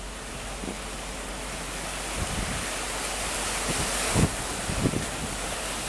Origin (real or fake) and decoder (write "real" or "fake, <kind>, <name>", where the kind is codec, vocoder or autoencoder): real